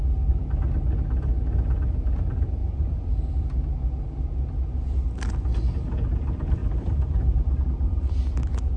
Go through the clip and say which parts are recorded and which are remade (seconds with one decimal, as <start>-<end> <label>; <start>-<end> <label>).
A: 0.0-2.6 recorded; 2.6-3.4 remade; 3.4-6.6 recorded; 6.6-7.6 remade; 7.6-8.8 recorded

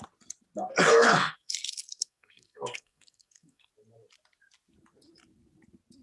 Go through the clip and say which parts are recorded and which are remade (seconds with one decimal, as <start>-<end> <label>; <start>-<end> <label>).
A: 0.0-0.9 recorded; 0.9-3.7 remade; 3.7-6.0 recorded

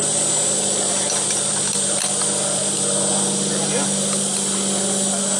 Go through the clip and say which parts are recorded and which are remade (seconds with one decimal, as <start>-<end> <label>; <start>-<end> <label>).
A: 0.0-5.4 recorded

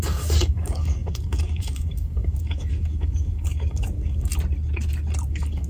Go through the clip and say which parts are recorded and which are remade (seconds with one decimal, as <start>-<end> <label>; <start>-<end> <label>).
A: 0.0-4.3 remade; 4.3-5.3 recorded; 5.3-5.7 remade

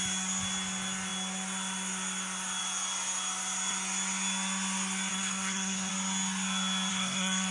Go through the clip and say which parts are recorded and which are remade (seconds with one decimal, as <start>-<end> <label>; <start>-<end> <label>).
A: 0.0-5.1 recorded; 5.1-5.9 remade; 5.9-6.9 recorded; 6.9-7.5 remade

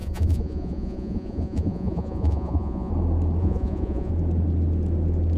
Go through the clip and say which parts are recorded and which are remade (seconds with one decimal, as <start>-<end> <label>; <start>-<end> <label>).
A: 0.0-2.9 remade; 2.9-3.4 recorded; 3.4-4.1 remade; 4.1-5.4 recorded

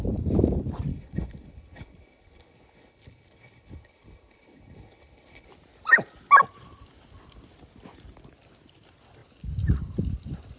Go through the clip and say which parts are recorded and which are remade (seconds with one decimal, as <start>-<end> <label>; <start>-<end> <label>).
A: 0.0-0.9 recorded; 0.9-5.5 remade; 5.5-10.6 recorded